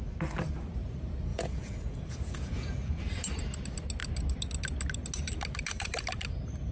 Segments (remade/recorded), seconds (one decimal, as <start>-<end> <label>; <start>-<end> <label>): 0.0-1.3 recorded; 1.3-3.0 remade; 3.0-6.7 recorded